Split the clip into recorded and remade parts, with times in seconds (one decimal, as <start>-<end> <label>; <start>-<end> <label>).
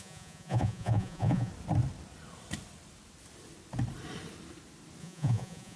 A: 0.0-1.5 remade; 1.5-5.0 recorded; 5.0-5.8 remade